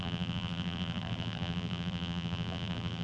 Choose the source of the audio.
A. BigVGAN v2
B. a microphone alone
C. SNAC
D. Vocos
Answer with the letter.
A